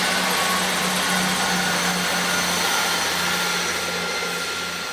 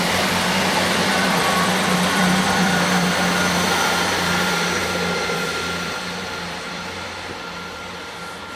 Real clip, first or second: first